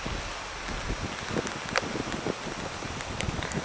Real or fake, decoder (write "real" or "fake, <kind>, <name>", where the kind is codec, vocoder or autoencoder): real